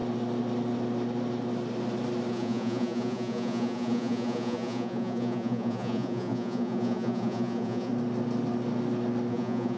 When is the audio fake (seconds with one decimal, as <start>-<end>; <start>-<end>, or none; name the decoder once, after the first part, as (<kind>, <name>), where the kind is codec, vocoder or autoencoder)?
2.3-7.9 (vocoder, Vocos); 9.3-9.8